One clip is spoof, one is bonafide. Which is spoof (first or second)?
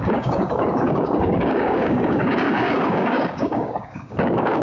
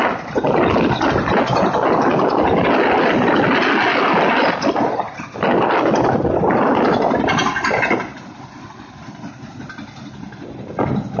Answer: first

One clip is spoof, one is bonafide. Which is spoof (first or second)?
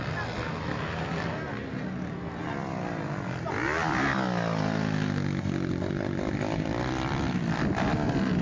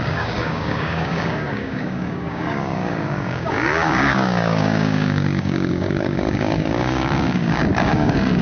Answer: second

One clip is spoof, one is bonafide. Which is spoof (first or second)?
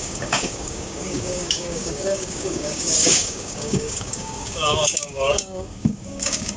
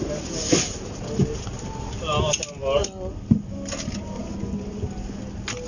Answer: first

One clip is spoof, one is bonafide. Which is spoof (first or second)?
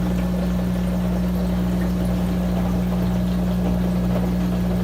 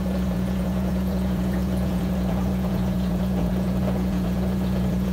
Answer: second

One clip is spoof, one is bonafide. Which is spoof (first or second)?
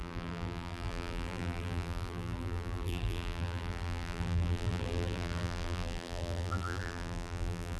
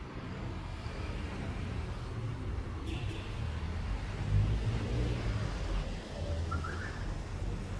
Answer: first